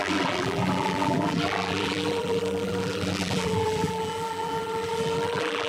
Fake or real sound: fake